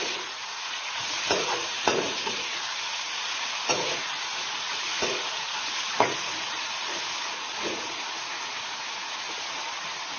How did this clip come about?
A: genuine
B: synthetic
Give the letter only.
B